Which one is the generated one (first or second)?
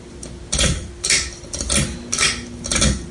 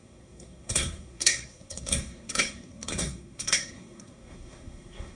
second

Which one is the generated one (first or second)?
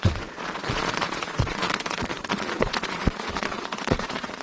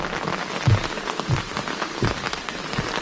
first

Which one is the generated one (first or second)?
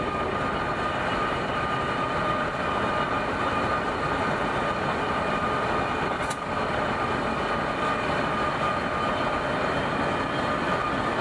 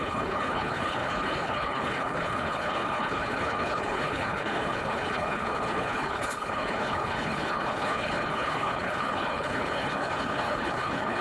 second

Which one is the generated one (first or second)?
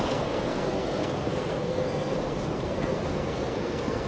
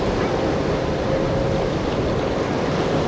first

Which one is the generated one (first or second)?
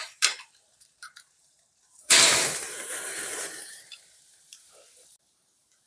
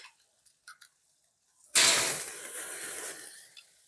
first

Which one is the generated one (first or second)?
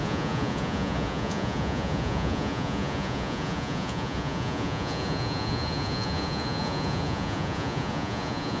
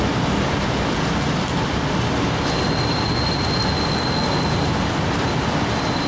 first